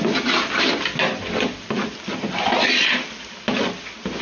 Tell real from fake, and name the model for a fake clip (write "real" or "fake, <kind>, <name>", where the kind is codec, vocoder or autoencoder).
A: real